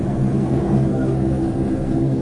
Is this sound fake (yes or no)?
yes